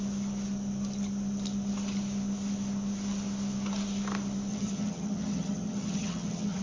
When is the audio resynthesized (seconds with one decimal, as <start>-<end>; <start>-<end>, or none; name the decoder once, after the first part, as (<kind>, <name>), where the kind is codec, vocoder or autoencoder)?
4.5-6.6 (vocoder, HiFi-GAN)